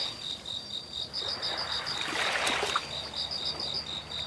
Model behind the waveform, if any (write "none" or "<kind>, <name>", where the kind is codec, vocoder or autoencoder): none